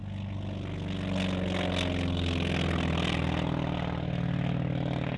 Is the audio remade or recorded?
recorded